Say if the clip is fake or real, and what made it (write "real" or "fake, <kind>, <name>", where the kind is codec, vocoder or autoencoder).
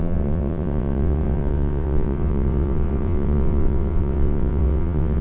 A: fake, vocoder, WaveNeXt